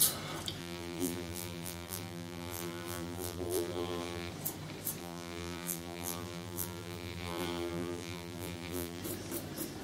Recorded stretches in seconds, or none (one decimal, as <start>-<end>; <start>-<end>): 0.0-0.6; 4.3-5.0; 9.0-9.8